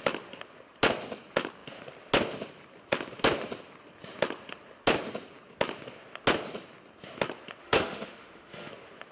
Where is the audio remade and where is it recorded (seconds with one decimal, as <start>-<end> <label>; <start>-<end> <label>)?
0.0-7.6 recorded; 7.6-8.7 remade; 8.7-9.1 recorded